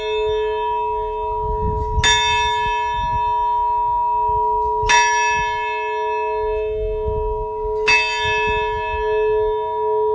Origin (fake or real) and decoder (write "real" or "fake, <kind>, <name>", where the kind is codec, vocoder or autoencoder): real